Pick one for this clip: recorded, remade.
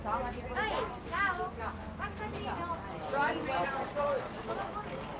recorded